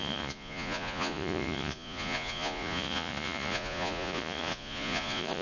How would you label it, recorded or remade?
remade